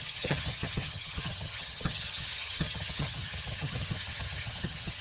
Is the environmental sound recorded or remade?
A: remade